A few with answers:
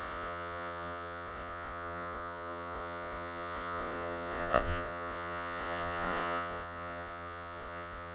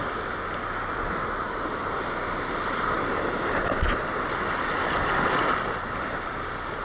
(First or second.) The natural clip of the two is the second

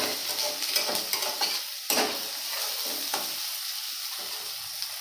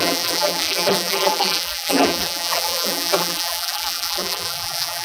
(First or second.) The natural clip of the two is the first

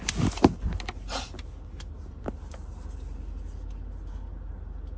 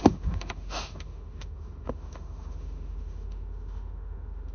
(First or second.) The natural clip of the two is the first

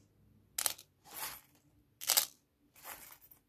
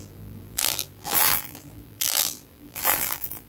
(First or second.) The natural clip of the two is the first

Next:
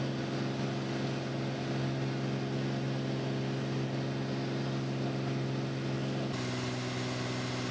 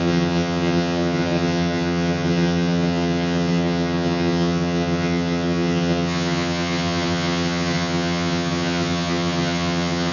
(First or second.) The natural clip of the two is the first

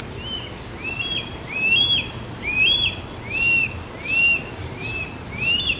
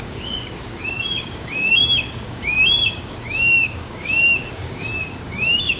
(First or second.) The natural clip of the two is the first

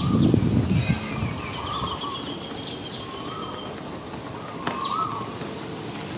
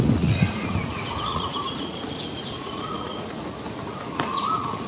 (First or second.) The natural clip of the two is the first